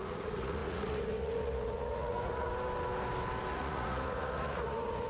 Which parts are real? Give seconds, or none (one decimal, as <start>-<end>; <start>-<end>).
2.5-3.5